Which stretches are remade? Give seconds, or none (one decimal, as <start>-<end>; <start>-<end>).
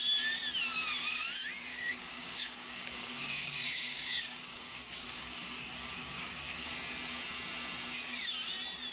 1.7-6.7